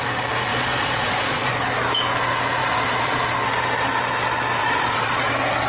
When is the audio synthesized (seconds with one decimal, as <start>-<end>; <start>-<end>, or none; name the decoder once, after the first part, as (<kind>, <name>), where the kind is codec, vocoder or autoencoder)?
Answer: 0.5-1.5 (vocoder, Vocos); 2.6-3.3; 4.6-5.3